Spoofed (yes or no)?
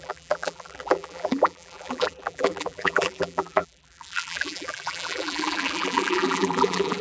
yes